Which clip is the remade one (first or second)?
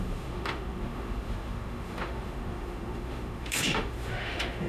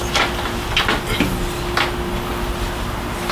first